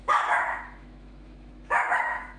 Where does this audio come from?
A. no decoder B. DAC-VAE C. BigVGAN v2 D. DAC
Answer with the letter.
B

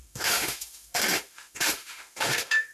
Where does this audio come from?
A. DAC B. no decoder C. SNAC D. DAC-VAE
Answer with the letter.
D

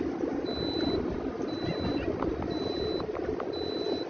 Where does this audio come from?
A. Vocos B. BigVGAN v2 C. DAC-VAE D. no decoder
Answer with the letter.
D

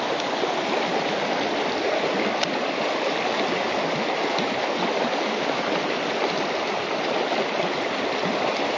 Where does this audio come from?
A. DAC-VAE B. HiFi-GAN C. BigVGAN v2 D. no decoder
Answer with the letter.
D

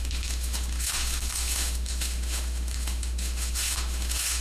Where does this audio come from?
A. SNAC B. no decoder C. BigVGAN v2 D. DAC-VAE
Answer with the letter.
D